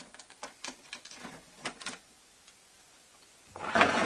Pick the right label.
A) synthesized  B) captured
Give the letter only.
A